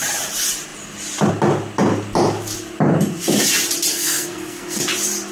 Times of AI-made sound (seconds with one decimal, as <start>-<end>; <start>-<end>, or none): 3.9-4.8